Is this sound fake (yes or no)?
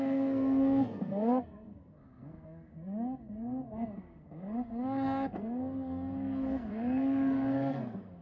yes